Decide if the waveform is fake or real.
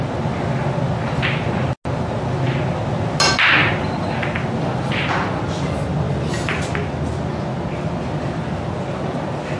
real